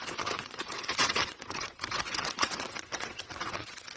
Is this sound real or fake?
fake